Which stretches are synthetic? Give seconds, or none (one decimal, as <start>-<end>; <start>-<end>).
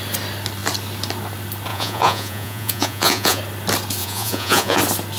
1.7-3.4; 4.0-4.8